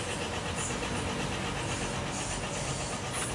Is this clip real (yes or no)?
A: yes